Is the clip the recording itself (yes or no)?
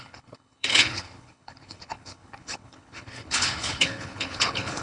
no